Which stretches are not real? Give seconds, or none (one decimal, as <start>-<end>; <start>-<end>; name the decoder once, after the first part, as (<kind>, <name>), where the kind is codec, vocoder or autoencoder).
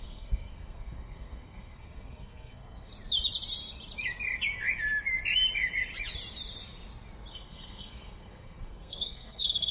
0.0-2.9 (codec, SNAC); 7.3-9.7